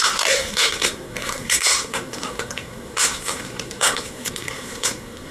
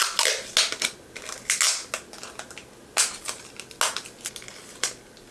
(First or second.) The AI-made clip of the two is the first